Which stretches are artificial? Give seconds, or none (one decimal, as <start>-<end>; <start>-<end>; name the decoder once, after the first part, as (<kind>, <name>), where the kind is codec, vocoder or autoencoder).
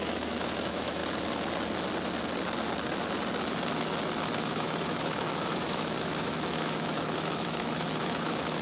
0.0-1.0 (autoencoder, DAC-VAE); 4.4-8.6